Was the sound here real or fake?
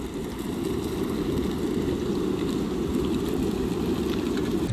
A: real